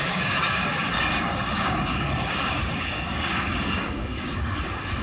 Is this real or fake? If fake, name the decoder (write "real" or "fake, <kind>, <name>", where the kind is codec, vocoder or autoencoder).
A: fake, codec, DAC